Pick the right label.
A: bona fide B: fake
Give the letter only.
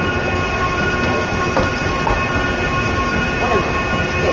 A